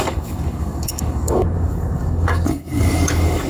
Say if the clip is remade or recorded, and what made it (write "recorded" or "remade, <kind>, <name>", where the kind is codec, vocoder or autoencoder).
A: remade, codec, DAC